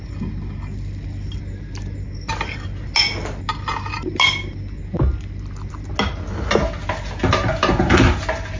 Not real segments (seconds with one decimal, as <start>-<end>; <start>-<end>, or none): none